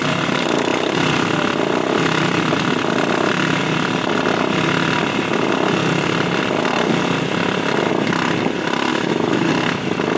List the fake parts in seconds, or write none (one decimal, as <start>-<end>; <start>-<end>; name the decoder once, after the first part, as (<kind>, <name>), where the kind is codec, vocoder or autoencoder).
8.9-9.5 (autoencoder, DAC-VAE)